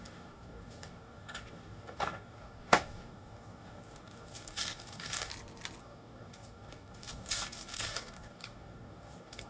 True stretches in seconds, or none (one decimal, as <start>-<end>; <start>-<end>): 5.3-5.8